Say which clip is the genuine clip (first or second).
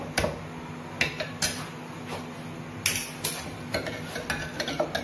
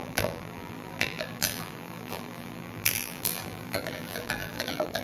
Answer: first